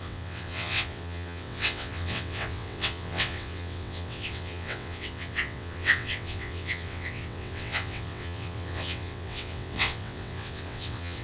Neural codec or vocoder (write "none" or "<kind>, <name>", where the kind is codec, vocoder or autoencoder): vocoder, WaveNeXt